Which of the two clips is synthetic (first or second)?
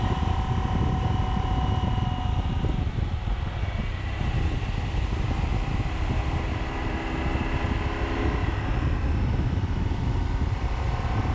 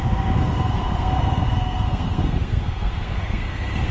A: second